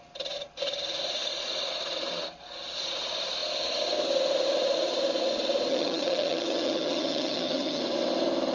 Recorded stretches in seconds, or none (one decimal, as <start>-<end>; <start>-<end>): 0.0-5.7; 7.8-8.5